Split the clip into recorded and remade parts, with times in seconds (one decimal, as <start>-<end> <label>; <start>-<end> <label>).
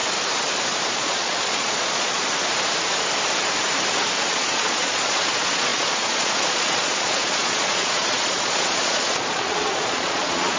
0.0-0.9 recorded; 0.9-2.2 remade; 2.2-4.3 recorded; 4.3-10.6 remade